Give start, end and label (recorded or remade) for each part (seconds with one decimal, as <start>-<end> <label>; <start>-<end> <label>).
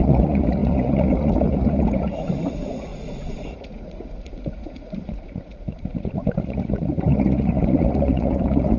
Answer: 0.0-8.8 remade